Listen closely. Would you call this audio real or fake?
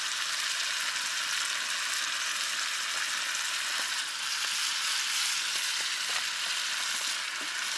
real